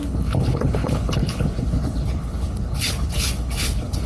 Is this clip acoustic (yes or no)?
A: no